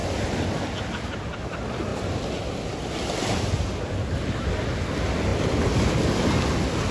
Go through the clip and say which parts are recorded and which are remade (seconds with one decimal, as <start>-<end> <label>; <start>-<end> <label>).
0.0-6.9 recorded